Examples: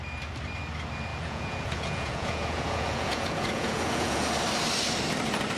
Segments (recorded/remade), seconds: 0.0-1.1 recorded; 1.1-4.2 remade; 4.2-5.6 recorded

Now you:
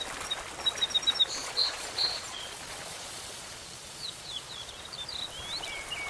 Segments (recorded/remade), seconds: 0.0-1.4 recorded; 1.4-4.8 remade; 4.8-6.1 recorded

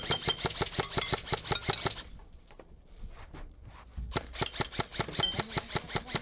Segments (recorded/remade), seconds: 0.0-6.2 recorded

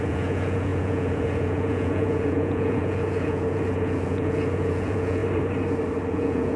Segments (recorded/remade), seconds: 0.0-5.2 remade; 5.2-6.1 recorded; 6.1-6.6 remade

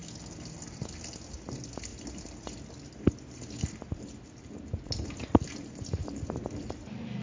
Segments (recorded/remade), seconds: 0.0-7.2 recorded

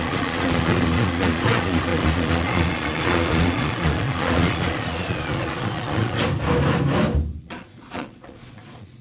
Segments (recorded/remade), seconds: 0.0-6.2 remade; 6.2-7.4 recorded; 7.4-9.0 remade

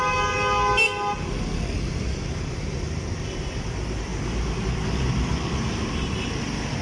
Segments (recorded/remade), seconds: 0.0-6.8 recorded